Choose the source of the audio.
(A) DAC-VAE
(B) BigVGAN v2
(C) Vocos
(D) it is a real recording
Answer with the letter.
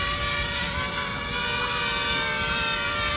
D